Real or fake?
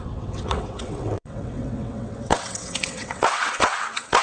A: fake